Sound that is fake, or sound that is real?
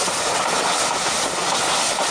real